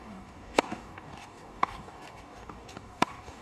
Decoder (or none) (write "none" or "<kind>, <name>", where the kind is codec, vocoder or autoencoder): codec, DAC